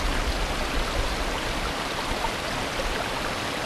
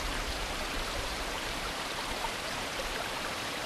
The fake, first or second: second